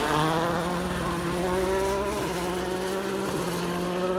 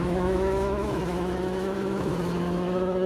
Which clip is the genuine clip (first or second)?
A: first